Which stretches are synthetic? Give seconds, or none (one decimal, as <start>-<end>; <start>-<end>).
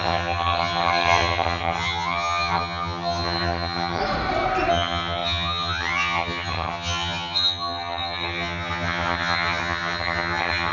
0.0-4.0; 4.7-10.7